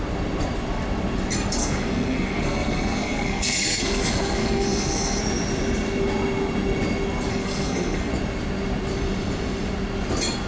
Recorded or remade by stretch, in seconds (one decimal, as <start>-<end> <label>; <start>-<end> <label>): 0.0-1.6 recorded; 1.6-5.2 remade; 5.2-7.3 recorded; 7.3-8.1 remade; 8.1-10.5 recorded